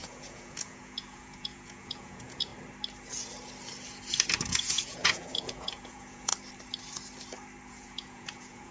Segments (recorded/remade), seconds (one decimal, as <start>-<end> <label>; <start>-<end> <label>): 0.0-2.5 remade; 2.5-4.5 recorded; 4.5-6.3 remade; 6.3-7.7 recorded; 7.7-8.7 remade